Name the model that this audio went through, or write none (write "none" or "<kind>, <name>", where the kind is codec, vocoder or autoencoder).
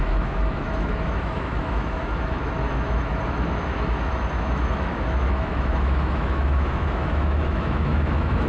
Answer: autoencoder, DAC-VAE